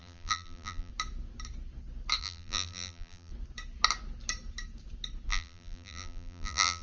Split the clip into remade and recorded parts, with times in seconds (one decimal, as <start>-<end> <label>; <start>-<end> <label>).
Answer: 0.0-0.9 remade; 0.9-2.2 recorded; 2.2-3.3 remade; 3.3-5.3 recorded; 5.3-6.8 remade